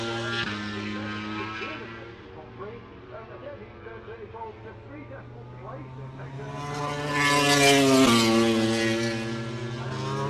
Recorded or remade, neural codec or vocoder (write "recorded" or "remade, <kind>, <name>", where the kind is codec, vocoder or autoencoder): recorded